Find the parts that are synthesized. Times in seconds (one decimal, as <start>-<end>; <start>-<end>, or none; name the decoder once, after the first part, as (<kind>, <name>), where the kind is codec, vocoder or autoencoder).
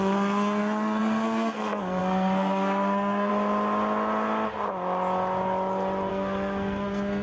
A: 0.0-3.3 (codec, SNAC); 6.1-7.2